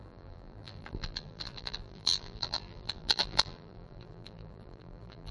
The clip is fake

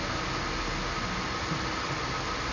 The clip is real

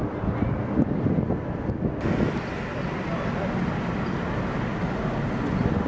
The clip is real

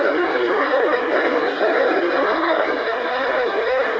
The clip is fake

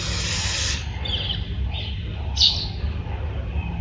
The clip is real